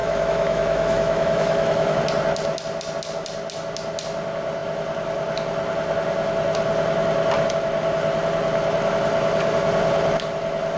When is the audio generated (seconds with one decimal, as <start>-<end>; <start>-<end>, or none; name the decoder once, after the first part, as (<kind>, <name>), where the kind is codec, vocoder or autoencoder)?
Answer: 0.0-2.0 (autoencoder, DAC-VAE)